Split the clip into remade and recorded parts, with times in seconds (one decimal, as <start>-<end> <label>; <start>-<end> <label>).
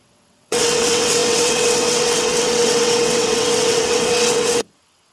0.0-5.1 remade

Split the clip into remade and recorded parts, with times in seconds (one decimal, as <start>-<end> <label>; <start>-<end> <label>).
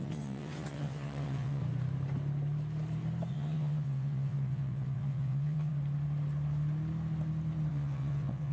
0.0-1.6 remade; 1.6-3.3 recorded; 3.3-5.7 remade; 5.7-7.7 recorded; 7.7-8.5 remade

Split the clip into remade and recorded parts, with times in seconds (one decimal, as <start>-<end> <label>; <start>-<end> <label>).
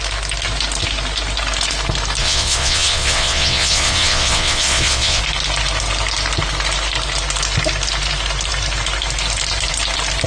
0.0-2.2 recorded; 2.2-5.2 remade; 5.2-10.3 recorded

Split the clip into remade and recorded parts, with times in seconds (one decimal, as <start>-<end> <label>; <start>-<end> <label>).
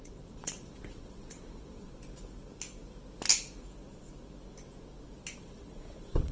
0.0-1.9 remade; 1.9-5.4 recorded; 5.4-6.3 remade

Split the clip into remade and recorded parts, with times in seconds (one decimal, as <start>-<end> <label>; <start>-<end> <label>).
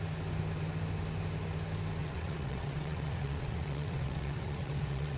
0.0-2.0 recorded; 2.0-5.2 remade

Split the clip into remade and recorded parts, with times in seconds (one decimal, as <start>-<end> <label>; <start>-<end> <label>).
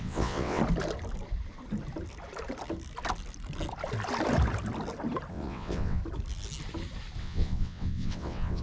0.0-0.6 remade; 0.6-5.3 recorded; 5.3-6.0 remade; 6.0-7.2 recorded; 7.2-8.6 remade